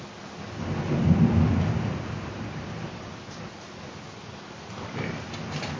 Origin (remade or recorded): recorded